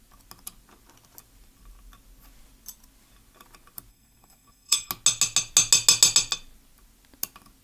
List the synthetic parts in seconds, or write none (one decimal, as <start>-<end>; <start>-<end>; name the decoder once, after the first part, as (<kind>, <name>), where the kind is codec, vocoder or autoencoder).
3.9-4.9 (codec, SNAC)